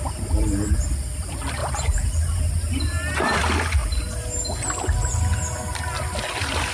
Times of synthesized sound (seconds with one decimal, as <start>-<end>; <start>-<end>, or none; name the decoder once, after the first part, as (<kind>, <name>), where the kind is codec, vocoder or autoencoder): 1.6-3.2 (vocoder, BigVGAN v2); 3.8-4.6